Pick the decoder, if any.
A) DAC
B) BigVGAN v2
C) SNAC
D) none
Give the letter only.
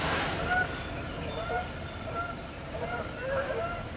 D